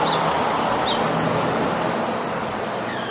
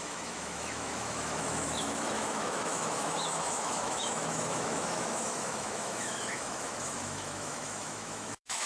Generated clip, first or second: second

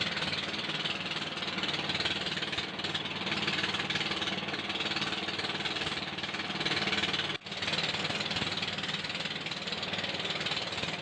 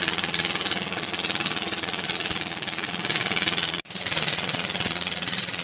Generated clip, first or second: second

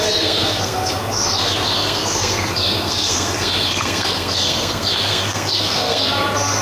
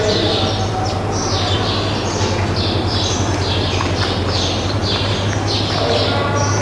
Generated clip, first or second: first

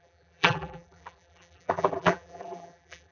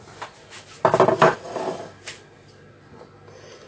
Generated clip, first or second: first